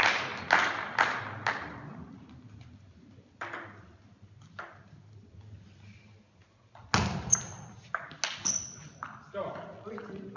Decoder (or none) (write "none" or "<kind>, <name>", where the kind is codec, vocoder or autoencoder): none